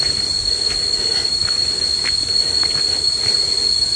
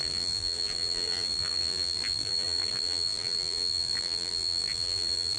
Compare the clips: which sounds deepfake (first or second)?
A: second